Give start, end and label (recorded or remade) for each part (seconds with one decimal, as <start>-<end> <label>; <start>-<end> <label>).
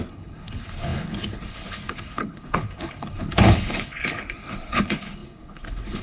0.0-6.0 remade